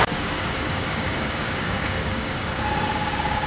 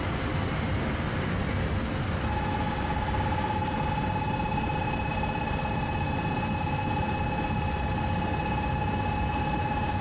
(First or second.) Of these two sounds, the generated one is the first